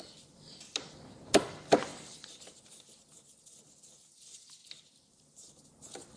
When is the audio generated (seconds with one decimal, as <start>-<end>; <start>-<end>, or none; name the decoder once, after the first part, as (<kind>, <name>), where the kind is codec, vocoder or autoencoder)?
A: none

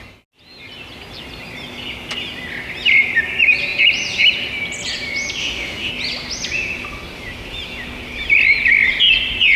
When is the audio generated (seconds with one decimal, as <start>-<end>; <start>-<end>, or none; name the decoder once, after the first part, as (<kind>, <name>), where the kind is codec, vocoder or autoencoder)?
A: 5.4-5.9 (autoencoder, DAC-VAE)

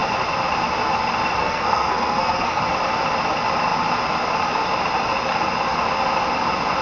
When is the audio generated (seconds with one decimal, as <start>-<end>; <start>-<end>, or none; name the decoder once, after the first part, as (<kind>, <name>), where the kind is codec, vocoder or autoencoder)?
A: 1.4-2.6 (codec, SNAC)

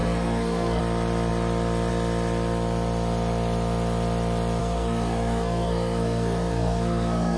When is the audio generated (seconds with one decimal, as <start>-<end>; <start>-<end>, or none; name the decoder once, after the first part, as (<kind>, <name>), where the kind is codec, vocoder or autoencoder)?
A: 0.0-0.8 (codec, SNAC); 4.6-7.4